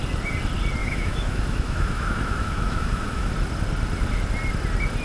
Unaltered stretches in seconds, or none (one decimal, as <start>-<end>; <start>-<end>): 0.0-0.8; 3.3-5.0